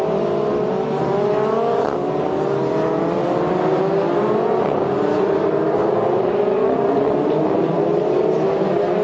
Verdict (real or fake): real